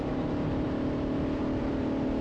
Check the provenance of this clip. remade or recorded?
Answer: remade